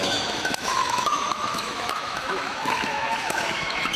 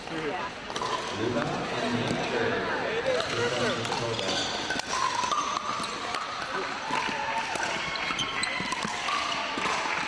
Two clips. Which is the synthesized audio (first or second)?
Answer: first